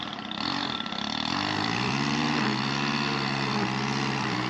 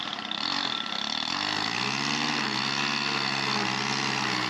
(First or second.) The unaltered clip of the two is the second